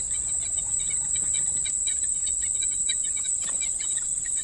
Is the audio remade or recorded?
remade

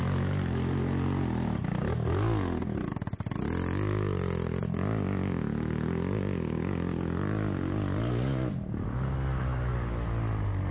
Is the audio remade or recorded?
recorded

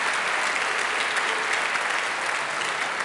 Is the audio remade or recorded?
recorded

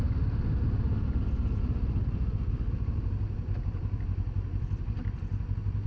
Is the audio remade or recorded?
recorded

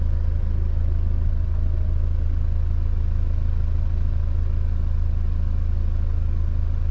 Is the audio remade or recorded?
recorded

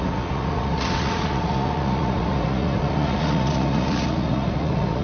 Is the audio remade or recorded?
remade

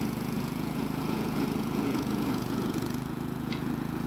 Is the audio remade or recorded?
remade